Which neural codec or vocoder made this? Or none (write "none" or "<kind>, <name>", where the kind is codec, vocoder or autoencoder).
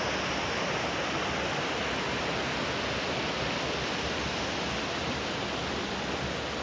none